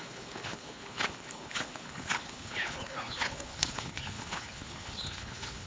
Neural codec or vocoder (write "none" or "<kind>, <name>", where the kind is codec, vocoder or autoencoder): codec, HILCodec